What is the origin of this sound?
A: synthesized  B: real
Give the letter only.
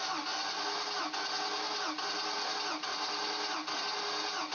B